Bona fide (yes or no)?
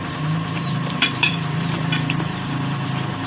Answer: no